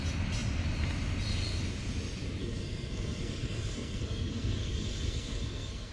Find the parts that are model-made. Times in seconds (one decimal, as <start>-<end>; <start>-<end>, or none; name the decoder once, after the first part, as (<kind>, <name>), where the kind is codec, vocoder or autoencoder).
2.4-5.9 (codec, SNAC)